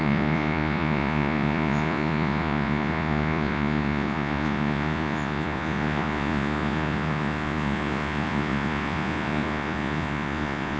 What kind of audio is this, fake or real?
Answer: fake